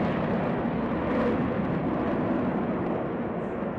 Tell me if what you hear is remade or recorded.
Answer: recorded